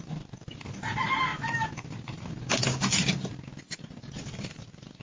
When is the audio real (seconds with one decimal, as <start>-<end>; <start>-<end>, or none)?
0.0-5.0